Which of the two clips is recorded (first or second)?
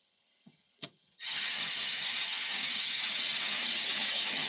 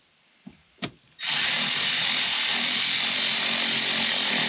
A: second